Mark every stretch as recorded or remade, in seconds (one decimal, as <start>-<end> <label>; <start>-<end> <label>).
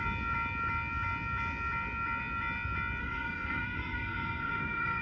0.0-3.0 recorded; 3.0-5.0 remade